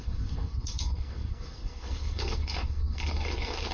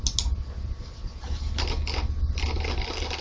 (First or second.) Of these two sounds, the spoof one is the first